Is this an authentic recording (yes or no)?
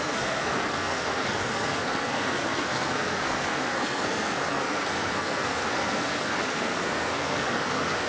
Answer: no